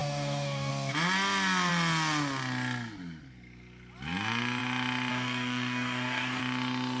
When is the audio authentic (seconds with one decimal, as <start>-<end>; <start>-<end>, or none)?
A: 0.7-5.1; 6.4-7.0